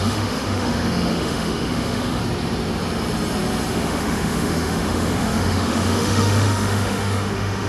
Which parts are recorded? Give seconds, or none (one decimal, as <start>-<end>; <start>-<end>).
2.2-3.7